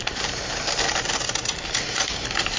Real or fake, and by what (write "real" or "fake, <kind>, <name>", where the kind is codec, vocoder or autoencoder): real